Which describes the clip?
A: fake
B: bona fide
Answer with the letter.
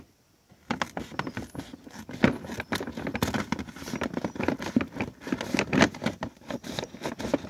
B